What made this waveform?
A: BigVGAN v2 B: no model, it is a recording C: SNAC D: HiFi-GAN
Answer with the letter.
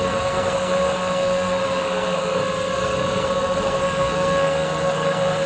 C